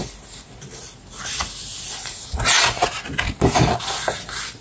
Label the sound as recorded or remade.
recorded